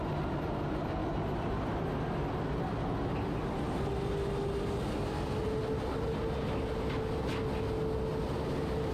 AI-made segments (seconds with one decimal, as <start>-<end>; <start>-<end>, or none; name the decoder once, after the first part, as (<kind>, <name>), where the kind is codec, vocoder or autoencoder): none